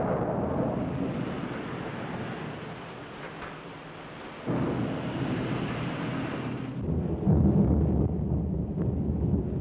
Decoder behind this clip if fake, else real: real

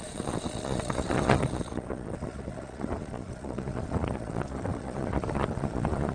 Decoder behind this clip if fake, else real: fake, vocoder, Vocos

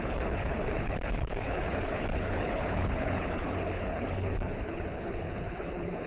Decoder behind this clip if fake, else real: fake, codec, HILCodec